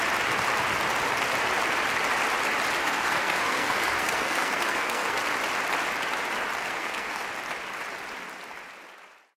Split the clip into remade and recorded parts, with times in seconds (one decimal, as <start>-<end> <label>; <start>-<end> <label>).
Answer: 0.0-2.8 recorded; 2.8-5.2 remade; 5.2-6.6 recorded; 6.6-7.2 remade; 7.2-9.4 recorded

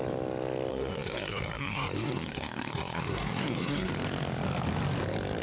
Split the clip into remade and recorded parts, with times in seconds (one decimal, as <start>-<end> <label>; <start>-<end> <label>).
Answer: 0.0-0.7 recorded; 0.7-3.9 remade; 3.9-5.4 recorded

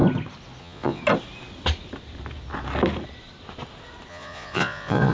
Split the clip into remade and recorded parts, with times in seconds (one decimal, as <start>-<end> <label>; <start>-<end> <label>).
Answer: 0.0-0.6 recorded; 0.6-1.0 remade; 1.0-4.1 recorded; 4.1-5.1 remade

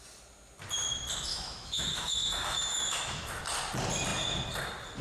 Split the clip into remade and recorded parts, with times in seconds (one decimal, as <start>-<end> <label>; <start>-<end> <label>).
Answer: 0.0-1.3 recorded; 1.3-3.4 remade; 3.4-5.0 recorded

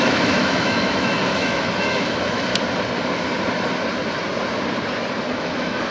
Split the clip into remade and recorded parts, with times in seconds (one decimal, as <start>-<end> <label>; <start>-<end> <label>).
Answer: 0.0-2.5 remade; 2.5-5.4 recorded; 5.4-5.9 remade

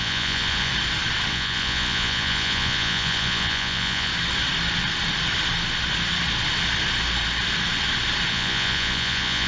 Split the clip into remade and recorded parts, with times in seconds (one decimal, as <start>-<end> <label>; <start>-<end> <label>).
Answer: 0.0-0.7 remade; 0.7-1.3 recorded; 1.3-4.1 remade; 4.1-8.3 recorded; 8.3-9.5 remade

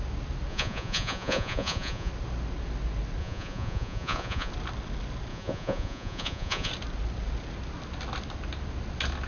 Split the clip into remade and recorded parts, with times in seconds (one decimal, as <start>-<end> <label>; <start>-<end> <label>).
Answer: 0.0-0.5 recorded; 0.5-2.1 remade; 2.1-3.2 recorded; 3.2-4.5 remade; 4.5-5.3 recorded; 5.3-6.7 remade; 6.7-9.3 recorded

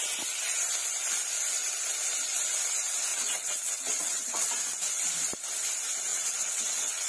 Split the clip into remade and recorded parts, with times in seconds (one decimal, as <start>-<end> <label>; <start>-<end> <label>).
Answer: 0.0-3.1 recorded; 3.1-4.5 remade; 4.5-6.1 recorded; 6.1-7.1 remade